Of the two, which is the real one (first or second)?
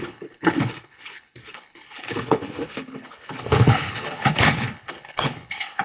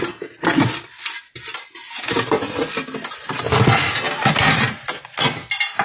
second